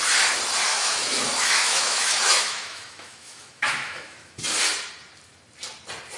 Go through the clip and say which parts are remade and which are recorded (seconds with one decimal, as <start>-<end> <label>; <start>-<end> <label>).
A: 0.0-0.7 recorded; 0.7-4.4 remade; 4.4-6.2 recorded